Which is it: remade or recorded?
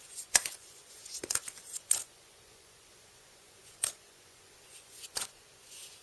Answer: remade